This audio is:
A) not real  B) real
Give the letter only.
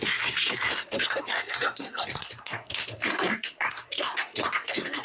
A